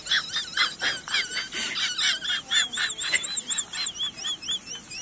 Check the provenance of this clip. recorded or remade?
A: recorded